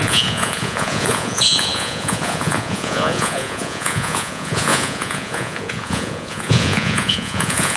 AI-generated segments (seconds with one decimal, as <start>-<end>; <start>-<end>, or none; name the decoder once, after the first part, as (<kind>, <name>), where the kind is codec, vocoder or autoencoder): 0.0-7.8 (vocoder, Vocos)